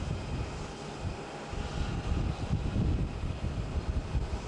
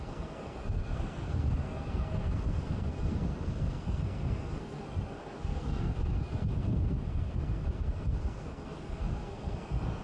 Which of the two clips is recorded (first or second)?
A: first